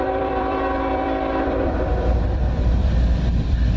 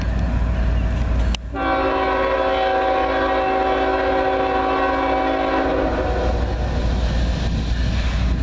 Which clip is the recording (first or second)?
second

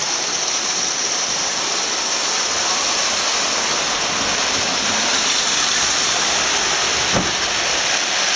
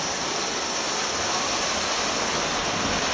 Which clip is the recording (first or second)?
second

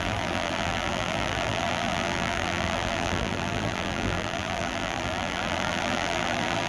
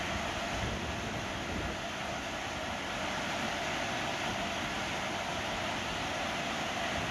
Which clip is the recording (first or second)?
second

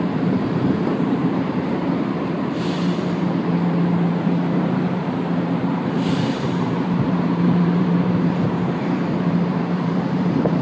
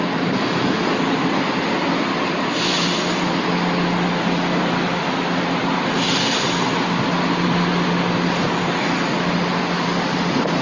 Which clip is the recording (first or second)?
second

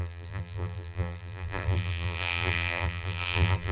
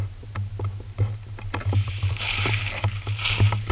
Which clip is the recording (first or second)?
second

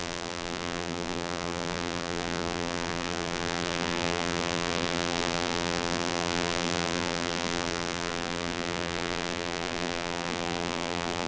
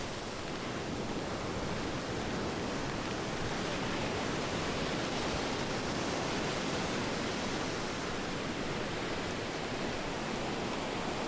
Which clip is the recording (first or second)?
second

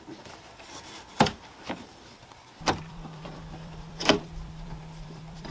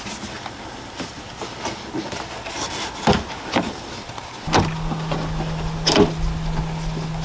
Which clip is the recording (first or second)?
second